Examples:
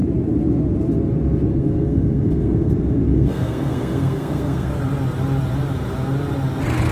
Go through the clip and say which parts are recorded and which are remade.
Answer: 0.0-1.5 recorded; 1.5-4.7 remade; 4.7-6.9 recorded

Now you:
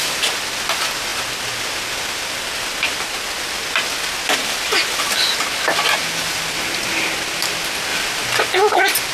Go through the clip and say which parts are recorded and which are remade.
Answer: 0.0-9.1 recorded

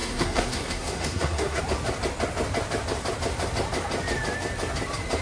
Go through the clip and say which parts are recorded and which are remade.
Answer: 0.0-1.6 remade; 1.6-5.2 recorded

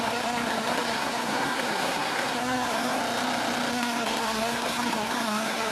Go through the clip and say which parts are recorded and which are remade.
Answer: 0.0-3.0 remade; 3.0-3.7 recorded; 3.7-5.7 remade

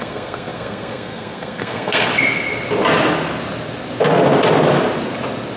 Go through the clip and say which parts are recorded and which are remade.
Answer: 0.0-2.1 remade; 2.1-5.6 recorded

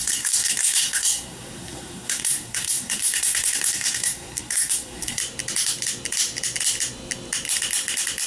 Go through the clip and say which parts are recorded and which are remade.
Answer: 0.0-5.2 remade; 5.2-8.3 recorded

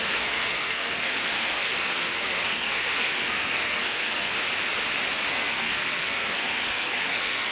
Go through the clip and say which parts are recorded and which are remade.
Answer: 0.0-4.3 remade; 4.3-5.3 recorded; 5.3-7.5 remade

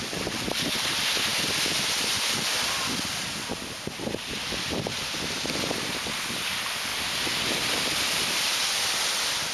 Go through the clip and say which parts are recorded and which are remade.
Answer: 0.0-9.5 recorded